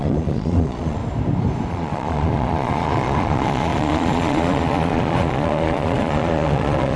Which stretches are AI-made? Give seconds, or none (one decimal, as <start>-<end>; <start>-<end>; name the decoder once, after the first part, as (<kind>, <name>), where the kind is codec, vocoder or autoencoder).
0.0-1.0 (vocoder, Vocos); 1.7-7.0